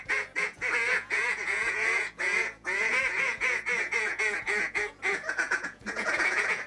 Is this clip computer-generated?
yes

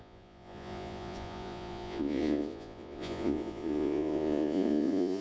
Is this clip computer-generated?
yes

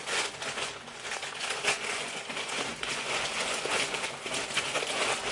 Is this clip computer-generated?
yes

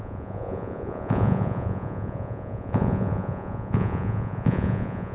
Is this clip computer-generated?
yes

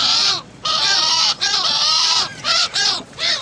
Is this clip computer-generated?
yes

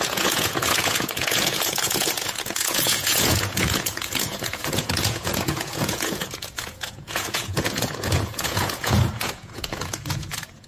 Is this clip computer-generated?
yes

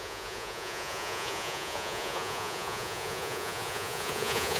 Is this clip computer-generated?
yes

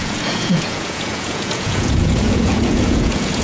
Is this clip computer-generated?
yes